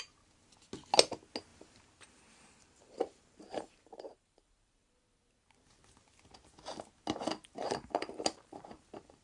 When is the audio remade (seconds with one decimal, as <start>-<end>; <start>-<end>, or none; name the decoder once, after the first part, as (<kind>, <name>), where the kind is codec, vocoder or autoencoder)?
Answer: 1.5-5.0 (vocoder, BigVGAN v2); 7.6-9.2